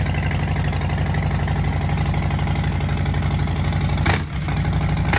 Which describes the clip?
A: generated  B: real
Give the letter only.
B